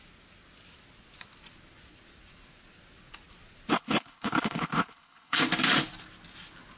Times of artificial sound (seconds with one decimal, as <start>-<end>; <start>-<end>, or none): 3.7-5.4